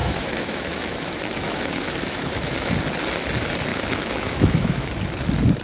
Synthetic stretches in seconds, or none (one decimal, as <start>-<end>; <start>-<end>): 0.0-2.7; 3.7-4.9